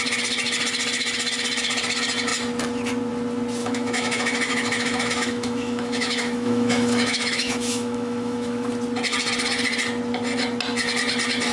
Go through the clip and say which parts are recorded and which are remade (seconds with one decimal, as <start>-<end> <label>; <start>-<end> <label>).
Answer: 0.0-3.6 recorded; 3.6-8.7 remade; 8.7-11.5 recorded